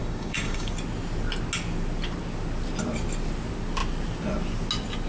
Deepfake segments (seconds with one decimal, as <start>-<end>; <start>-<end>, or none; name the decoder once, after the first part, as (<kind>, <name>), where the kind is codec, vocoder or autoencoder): 0.0-0.7 (codec, DAC)